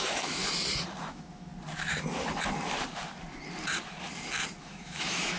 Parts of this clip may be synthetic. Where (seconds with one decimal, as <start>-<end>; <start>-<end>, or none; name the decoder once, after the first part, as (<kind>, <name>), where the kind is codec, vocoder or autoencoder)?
0.0-0.4 (autoencoder, DAC-VAE); 1.1-1.5; 4.6-5.4